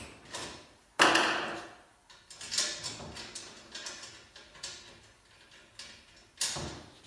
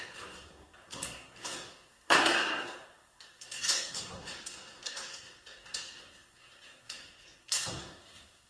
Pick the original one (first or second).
first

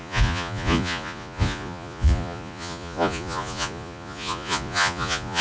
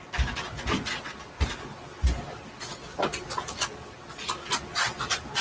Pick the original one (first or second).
second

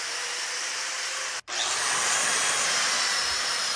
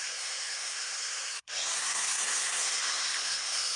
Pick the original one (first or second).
first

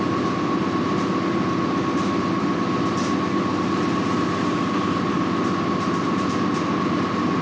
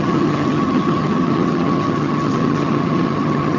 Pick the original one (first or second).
first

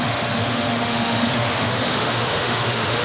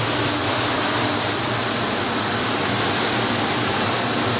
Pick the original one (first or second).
second